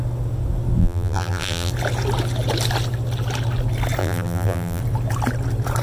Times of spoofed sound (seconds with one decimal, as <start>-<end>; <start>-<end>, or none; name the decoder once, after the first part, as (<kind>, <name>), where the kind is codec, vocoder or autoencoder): 0.8-1.7 (vocoder, BigVGAN v2); 4.0-4.8